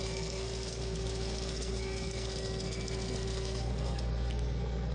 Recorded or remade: remade